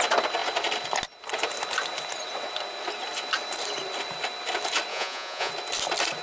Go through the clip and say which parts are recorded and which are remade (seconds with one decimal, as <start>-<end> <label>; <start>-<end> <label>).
0.0-4.9 recorded; 4.9-5.5 remade; 5.5-6.2 recorded